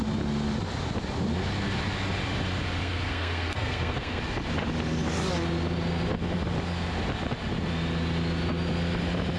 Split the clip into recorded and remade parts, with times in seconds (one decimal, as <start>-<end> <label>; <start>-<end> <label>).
0.0-2.8 recorded; 2.8-4.2 remade; 4.2-9.4 recorded